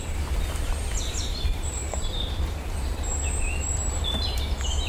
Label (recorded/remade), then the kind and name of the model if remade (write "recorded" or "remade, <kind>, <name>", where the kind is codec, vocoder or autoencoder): remade, vocoder, BigVGAN v2